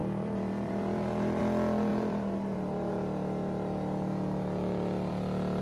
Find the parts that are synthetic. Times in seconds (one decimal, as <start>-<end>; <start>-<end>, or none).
0.0-1.4; 1.9-5.1

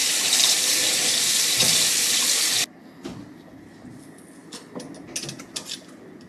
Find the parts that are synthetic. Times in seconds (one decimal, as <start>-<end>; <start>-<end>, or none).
0.0-2.2